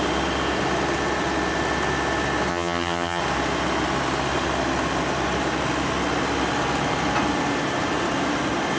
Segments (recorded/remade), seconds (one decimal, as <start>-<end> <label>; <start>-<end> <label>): 0.0-2.5 recorded; 2.5-3.2 remade; 3.2-8.8 recorded